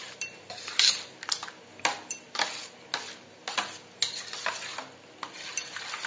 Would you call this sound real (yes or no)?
yes